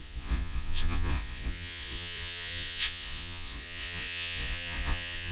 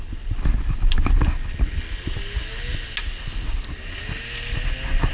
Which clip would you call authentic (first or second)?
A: second